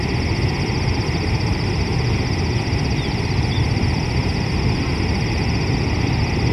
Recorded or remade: remade